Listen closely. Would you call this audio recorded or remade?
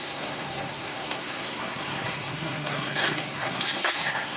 remade